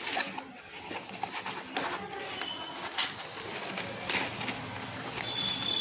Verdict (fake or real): real